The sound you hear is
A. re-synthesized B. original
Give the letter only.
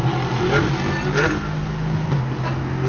B